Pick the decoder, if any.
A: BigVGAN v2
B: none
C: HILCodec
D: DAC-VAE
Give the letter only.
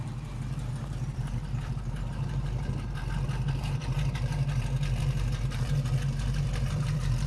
A